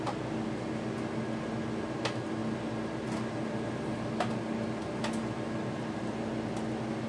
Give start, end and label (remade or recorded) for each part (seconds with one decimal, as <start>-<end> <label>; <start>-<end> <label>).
0.0-7.1 recorded